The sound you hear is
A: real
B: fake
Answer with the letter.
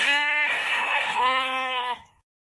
B